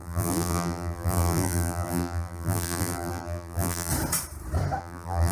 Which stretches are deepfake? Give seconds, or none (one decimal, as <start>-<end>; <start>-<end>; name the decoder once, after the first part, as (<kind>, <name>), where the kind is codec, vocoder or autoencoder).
0.0-3.9 (vocoder, BigVGAN v2); 4.8-5.3